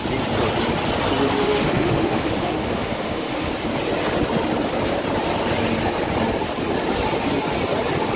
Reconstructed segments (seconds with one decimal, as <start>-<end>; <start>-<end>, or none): 1.4-3.5